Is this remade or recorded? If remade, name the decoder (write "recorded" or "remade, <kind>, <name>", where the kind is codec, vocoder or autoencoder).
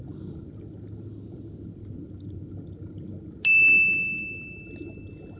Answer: recorded